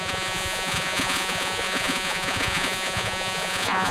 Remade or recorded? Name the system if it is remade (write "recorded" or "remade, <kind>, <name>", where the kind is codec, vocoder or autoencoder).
remade, vocoder, Vocos